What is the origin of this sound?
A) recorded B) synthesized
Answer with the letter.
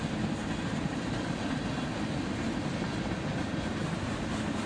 A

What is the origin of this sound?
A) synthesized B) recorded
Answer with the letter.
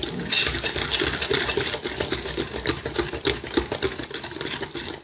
B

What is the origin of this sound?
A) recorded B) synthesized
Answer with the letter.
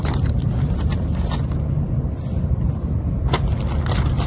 A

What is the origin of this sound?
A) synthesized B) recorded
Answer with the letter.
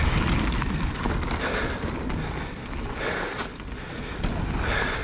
B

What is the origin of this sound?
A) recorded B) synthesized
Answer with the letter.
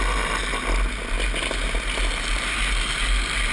A